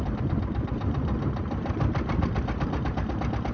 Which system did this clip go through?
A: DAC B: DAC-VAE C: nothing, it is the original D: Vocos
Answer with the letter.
C